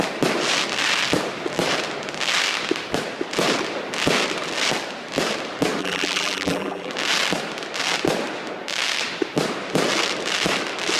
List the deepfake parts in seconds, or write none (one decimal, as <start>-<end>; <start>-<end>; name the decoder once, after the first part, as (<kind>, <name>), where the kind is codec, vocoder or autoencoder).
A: 5.8-6.9 (vocoder, BigVGAN v2)